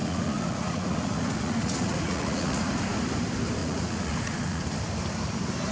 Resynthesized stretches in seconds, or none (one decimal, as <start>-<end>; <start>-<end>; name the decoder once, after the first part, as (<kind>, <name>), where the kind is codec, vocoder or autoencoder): 0.0-2.7 (vocoder, Vocos); 3.6-4.6

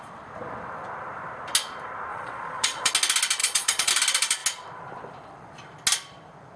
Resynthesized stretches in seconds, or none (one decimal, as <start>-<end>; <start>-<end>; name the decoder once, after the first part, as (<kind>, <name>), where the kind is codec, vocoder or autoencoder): 2.1-2.9 (vocoder, Vocos); 3.4-3.9

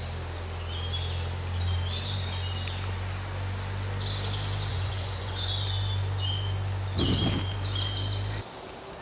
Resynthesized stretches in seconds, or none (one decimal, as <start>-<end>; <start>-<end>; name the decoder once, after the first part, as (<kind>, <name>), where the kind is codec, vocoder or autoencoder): 4.7-5.5 (vocoder, Vocos)

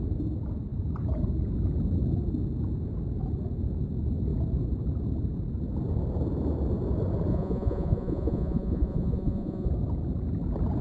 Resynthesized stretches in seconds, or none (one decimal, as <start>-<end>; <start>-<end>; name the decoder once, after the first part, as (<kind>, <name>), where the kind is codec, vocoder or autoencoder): 7.3-9.7 (vocoder, Vocos)